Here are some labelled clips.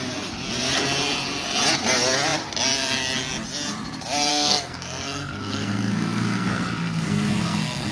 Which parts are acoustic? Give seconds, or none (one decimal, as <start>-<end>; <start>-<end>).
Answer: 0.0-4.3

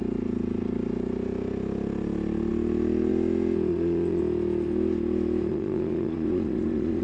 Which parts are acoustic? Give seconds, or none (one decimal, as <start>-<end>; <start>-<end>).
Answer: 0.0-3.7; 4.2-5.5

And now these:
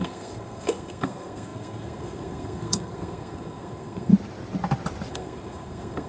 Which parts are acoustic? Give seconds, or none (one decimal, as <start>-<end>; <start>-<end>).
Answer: 4.1-5.1